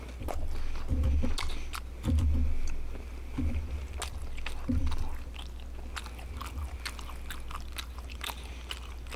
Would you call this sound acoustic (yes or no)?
yes